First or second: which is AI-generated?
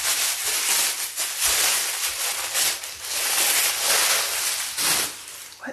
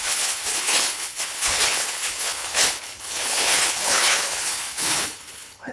second